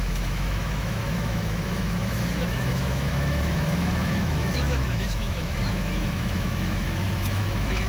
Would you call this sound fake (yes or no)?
yes